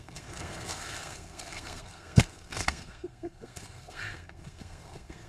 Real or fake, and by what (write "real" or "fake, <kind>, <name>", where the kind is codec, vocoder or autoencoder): fake, codec, SNAC